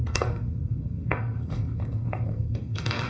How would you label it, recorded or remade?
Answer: remade